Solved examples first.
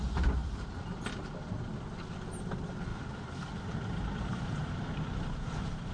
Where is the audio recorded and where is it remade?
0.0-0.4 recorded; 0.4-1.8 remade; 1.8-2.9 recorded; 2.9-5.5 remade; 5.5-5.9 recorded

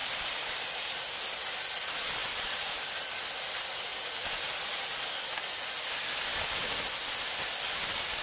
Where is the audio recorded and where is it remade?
0.0-1.4 remade; 1.4-3.9 recorded; 3.9-4.4 remade; 4.4-6.3 recorded; 6.3-7.2 remade; 7.2-8.2 recorded

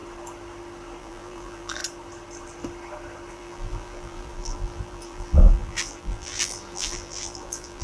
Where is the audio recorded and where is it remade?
0.0-1.0 recorded; 1.0-1.8 remade; 1.8-3.3 recorded; 3.3-7.8 remade